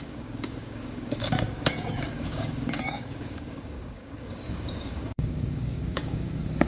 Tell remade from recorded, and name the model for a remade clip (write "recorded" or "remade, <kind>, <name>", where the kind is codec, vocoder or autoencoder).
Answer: remade, codec, DAC